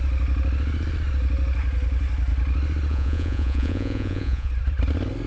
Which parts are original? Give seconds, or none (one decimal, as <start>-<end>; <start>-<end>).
0.0-2.9; 4.5-5.3